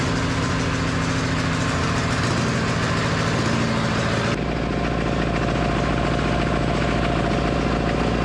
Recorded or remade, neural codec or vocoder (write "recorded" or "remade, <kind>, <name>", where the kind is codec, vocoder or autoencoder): recorded